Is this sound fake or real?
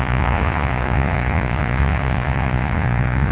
fake